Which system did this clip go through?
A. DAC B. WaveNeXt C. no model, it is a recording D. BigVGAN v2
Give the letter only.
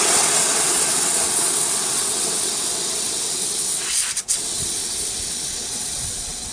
B